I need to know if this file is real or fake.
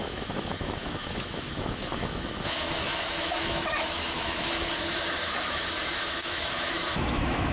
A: fake